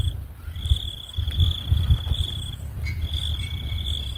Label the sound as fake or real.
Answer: real